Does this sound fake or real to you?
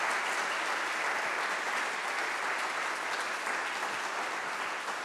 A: real